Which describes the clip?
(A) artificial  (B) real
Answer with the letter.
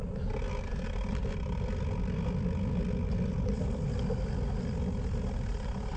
B